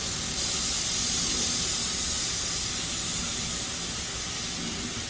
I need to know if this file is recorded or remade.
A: recorded